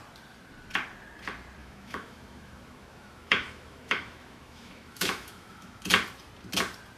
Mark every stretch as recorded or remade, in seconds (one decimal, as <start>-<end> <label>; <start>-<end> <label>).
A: 0.0-1.6 recorded; 1.6-5.8 remade; 5.8-7.0 recorded